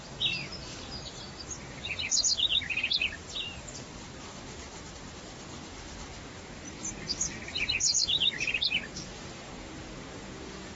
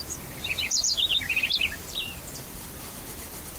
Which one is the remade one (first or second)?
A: second